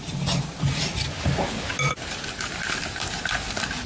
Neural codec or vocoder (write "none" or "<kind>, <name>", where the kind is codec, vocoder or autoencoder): none